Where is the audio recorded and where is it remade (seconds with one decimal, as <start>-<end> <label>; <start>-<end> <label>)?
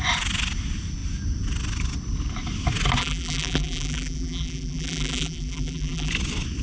0.0-3.0 recorded; 3.0-6.1 remade; 6.1-6.6 recorded